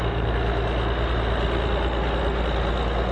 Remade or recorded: recorded